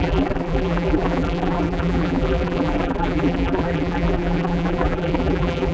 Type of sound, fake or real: fake